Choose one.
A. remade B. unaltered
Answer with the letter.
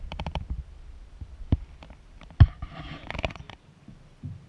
A